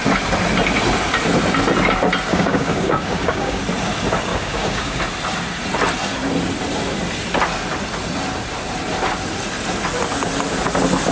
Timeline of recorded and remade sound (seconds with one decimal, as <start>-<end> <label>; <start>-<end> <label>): 0.0-2.3 recorded; 2.3-3.6 remade; 3.6-4.3 recorded; 4.3-5.0 remade; 5.0-11.1 recorded

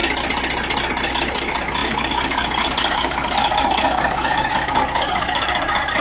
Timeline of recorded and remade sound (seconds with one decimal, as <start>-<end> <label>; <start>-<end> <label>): 0.0-1.1 recorded; 1.1-6.0 remade

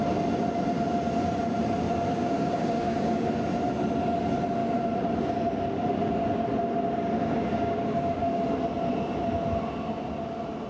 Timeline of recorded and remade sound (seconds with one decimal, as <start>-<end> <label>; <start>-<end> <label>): 0.0-2.2 recorded; 2.2-3.3 remade; 3.3-7.5 recorded; 7.5-8.4 remade; 8.4-10.7 recorded

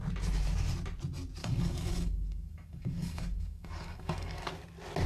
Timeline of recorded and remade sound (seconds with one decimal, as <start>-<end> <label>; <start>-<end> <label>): 0.0-1.4 recorded; 1.4-4.5 remade; 4.5-5.1 recorded

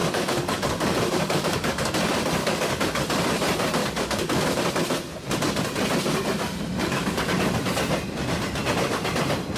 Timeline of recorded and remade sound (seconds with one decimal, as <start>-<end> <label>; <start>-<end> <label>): 0.0-1.9 remade; 1.9-2.4 recorded; 2.4-3.0 remade; 3.0-3.8 recorded; 3.8-4.4 remade; 4.4-6.8 recorded; 6.8-7.3 remade; 7.3-9.6 recorded